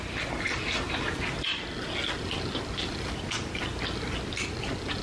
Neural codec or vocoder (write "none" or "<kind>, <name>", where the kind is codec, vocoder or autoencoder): none